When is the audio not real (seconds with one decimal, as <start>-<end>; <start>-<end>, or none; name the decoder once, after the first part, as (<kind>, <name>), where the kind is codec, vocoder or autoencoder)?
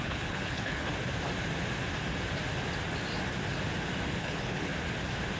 0.0-0.9 (codec, HILCodec); 4.1-4.7